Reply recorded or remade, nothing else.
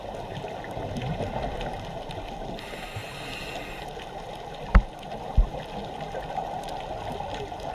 recorded